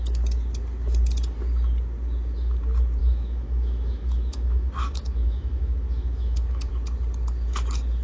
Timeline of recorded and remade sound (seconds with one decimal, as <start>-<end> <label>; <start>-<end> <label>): 0.0-3.0 recorded; 3.0-6.7 remade; 6.7-8.0 recorded